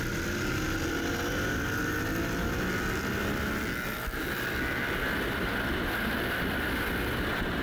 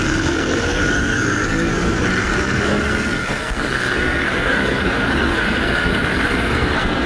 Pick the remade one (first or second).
second